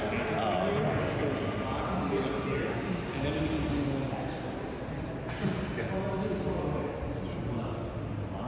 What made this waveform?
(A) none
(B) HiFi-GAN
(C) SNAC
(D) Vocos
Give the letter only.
A